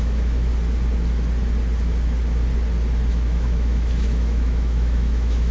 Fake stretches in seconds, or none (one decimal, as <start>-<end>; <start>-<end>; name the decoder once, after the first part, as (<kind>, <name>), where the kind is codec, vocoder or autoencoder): 0.0-0.5 (autoencoder, DAC-VAE); 3.1-5.5